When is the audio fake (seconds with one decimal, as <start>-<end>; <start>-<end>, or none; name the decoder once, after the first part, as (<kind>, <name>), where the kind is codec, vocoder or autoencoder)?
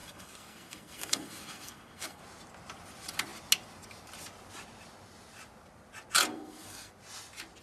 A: 0.0-2.2 (codec, SNAC); 6.3-6.9